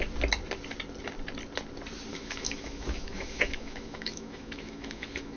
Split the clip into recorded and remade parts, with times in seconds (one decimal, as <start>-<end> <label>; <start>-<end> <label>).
0.0-2.1 recorded; 2.1-5.4 remade